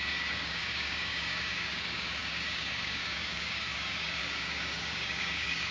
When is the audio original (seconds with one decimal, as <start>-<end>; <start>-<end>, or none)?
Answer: none